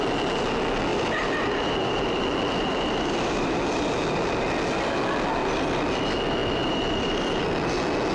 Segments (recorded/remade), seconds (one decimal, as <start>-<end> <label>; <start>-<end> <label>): 0.0-0.9 recorded; 0.9-4.9 remade; 4.9-5.4 recorded; 5.4-6.0 remade; 6.0-6.4 recorded; 6.4-7.4 remade; 7.4-8.1 recorded